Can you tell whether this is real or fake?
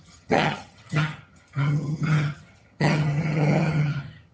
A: fake